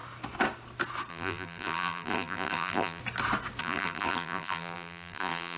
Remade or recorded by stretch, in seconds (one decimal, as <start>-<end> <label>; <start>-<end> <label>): 0.0-1.1 recorded; 1.1-3.0 remade; 3.0-3.6 recorded; 3.6-5.6 remade